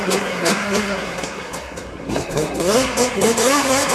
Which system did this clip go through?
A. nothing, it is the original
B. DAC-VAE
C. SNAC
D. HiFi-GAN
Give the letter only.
C